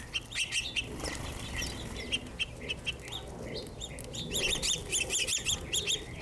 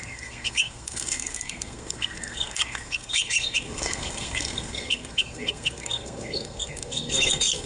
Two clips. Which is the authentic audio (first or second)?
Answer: first